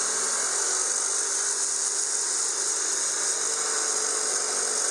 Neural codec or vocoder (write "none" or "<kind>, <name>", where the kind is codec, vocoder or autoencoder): none